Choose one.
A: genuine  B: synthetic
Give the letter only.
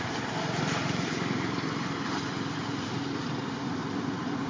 B